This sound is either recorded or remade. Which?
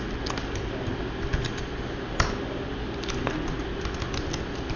recorded